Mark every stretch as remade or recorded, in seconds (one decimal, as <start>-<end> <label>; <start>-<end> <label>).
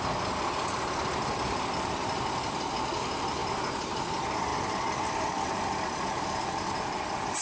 0.0-7.4 recorded